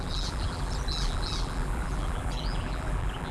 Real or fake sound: fake